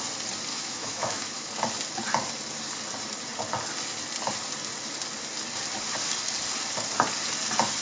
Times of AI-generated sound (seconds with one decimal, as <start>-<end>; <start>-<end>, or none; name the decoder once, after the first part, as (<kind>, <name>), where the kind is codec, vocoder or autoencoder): 0.5-1.5 (autoencoder, DAC-VAE)

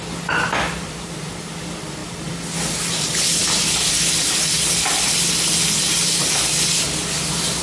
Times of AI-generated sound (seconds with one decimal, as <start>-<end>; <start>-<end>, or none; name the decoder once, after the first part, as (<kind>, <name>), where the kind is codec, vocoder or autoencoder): none

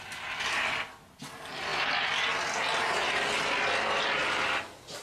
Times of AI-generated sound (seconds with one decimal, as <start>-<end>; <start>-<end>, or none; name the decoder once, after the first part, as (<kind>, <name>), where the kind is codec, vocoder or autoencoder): none

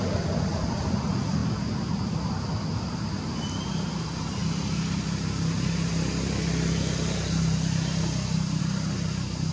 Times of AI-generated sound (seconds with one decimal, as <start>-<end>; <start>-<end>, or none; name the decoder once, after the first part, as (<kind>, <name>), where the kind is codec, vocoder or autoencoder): none

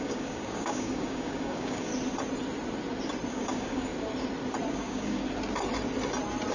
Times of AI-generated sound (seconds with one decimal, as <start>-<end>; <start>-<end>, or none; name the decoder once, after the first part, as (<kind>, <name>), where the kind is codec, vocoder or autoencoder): 0.0-1.9 (codec, DAC); 3.3-3.9; 4.7-5.2

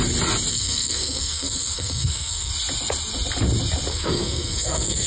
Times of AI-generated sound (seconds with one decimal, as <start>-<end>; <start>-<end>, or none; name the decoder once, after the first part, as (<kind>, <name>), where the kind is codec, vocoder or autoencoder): 0.5-2.5 (codec, SNAC); 3.9-5.1

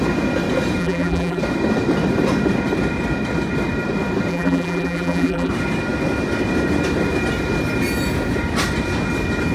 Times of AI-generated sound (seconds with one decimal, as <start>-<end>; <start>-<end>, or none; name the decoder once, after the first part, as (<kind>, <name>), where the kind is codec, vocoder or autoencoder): 0.8-1.4 (vocoder, BigVGAN v2); 4.3-5.5